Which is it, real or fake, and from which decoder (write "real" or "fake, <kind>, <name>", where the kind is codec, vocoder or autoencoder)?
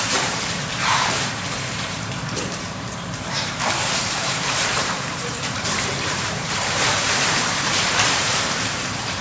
fake, vocoder, BigVGAN v2